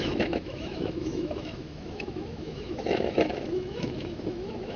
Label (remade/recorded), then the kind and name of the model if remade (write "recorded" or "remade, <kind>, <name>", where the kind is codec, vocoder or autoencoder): remade, autoencoder, DAC-VAE